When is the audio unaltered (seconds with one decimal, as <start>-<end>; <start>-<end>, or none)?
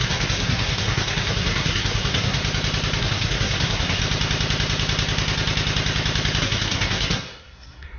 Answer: 2.4-3.0; 4.0-6.4